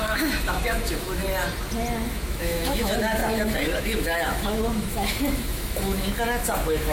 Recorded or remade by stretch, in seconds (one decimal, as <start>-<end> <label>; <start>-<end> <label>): 0.0-1.2 remade; 1.2-2.1 recorded; 2.1-6.9 remade